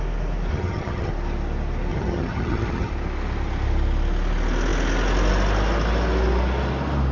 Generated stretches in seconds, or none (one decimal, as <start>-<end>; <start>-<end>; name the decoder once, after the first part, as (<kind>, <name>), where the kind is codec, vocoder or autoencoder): 0.5-1.1 (vocoder, HiFi-GAN); 1.9-2.9